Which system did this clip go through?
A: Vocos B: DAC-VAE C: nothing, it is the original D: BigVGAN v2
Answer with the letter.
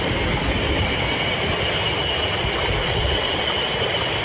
C